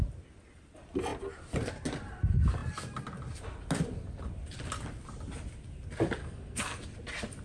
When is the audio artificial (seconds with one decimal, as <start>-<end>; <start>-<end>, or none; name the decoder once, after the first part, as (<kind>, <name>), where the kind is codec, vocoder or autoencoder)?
6.2-6.8 (codec, SNAC)